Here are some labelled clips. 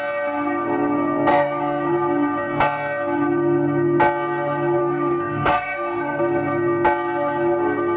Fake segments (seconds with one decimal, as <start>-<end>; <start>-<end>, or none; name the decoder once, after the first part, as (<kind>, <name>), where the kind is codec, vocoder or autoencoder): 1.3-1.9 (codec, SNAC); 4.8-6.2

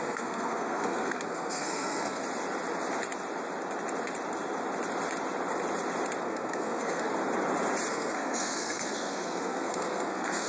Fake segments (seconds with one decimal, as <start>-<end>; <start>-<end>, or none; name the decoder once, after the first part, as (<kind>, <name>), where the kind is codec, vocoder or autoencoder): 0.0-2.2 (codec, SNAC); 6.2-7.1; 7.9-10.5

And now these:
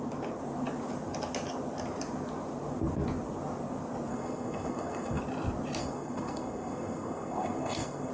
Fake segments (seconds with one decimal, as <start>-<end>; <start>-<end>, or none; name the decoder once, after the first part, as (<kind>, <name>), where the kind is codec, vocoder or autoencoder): 4.1-5.2 (codec, SNAC); 5.8-8.1

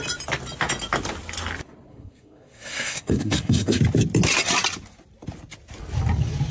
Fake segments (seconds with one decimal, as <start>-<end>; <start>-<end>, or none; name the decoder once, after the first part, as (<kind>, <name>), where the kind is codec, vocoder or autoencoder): 1.9-3.8 (codec, SNAC)

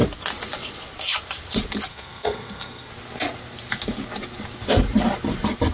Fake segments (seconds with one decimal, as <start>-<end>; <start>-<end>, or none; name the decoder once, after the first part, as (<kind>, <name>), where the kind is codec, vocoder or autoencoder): 1.9-2.9 (codec, SNAC)

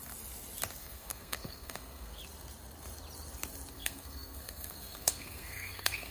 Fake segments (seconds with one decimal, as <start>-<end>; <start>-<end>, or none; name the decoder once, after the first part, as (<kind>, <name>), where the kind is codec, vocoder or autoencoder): 0.8-2.2 (codec, SNAC); 3.7-6.1

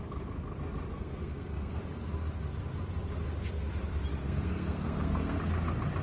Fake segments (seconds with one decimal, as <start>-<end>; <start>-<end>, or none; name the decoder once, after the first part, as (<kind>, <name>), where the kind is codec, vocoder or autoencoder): 0.9-1.8 (codec, SNAC); 4.2-5.4

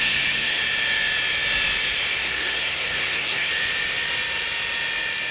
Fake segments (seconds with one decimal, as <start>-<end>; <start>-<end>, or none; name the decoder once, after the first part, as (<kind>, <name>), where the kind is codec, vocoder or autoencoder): 0.0-0.6 (codec, SNAC); 2.2-3.5